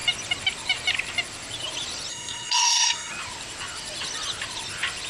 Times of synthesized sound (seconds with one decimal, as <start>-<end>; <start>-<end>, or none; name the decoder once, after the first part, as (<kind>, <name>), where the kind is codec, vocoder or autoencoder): 2.1-3.1 (codec, SNAC)